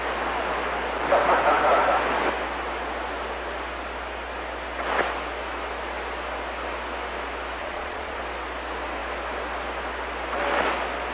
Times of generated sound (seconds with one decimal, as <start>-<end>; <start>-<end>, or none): 7.6-8.2

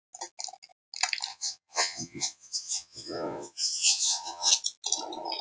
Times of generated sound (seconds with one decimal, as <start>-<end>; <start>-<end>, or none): 1.3-4.5

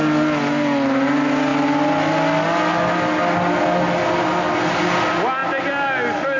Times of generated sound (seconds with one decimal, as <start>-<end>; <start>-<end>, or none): none

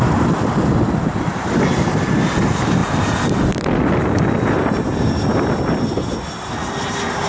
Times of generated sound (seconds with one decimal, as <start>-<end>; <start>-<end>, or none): none

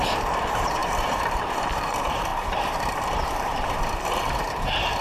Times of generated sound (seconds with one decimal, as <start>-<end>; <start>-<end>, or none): 0.0-5.0

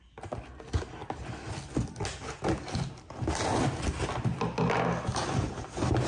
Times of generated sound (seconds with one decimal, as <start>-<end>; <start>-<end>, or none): none